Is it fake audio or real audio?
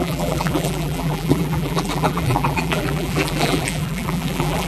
fake